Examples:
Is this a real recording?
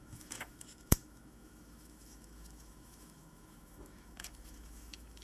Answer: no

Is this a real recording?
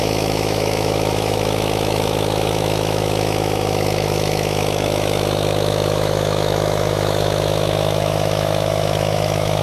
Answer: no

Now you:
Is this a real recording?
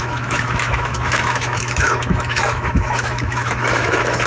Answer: no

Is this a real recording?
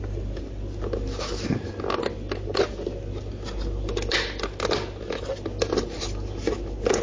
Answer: yes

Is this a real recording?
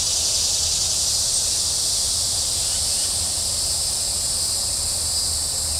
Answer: yes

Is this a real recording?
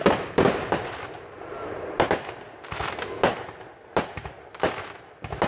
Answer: yes